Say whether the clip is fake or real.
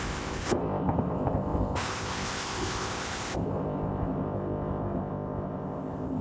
fake